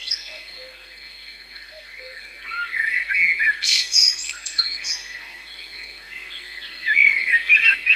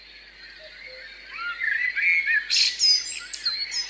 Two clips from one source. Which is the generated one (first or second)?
first